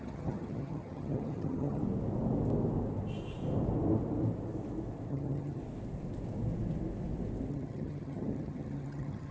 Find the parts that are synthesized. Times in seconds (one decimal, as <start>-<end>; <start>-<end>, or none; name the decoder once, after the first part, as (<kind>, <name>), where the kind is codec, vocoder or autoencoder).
0.0-1.8 (vocoder, HiFi-GAN); 5.1-5.6; 7.5-9.3